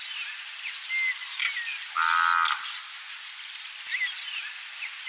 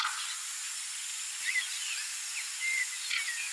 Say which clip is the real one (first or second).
first